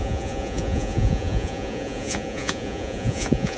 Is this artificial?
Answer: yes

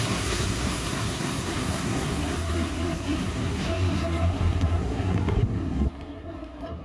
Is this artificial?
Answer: yes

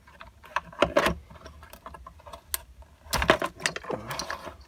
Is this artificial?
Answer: no